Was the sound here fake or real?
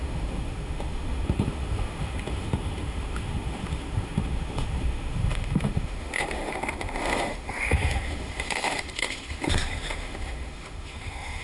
fake